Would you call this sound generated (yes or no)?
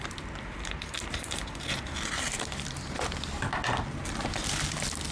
yes